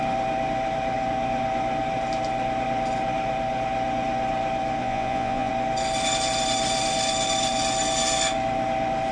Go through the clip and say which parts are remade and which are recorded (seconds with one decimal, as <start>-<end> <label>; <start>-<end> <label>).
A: 0.0-4.8 recorded; 4.8-5.5 remade; 5.5-9.1 recorded